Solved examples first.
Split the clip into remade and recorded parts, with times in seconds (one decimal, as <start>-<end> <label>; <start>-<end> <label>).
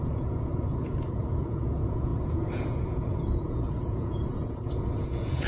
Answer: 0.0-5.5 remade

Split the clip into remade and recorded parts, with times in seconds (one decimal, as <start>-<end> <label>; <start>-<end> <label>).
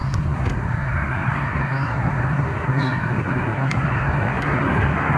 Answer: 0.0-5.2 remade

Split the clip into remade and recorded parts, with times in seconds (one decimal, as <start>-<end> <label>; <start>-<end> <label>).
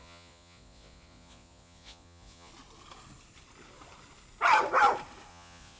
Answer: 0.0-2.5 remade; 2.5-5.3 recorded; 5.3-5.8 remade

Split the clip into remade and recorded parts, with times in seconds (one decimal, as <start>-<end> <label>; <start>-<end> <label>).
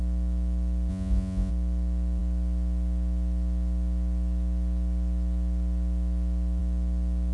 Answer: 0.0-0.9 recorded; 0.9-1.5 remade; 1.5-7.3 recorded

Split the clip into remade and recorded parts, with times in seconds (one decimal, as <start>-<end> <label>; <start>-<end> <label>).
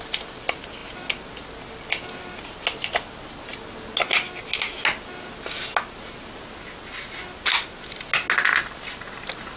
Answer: 0.0-9.6 recorded